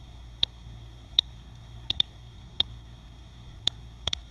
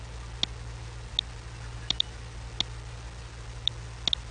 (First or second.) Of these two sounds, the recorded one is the second